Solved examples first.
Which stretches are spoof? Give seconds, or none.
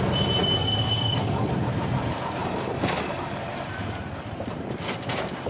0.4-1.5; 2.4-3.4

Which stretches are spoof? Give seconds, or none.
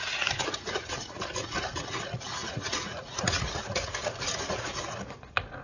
0.0-5.6